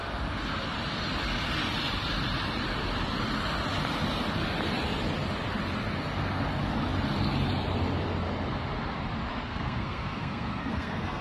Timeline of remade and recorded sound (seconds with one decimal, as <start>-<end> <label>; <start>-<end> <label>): 0.0-9.3 recorded; 9.3-11.2 remade